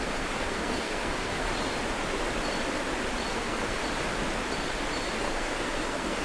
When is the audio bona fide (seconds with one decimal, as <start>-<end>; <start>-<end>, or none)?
1.5-3.3; 3.8-5.2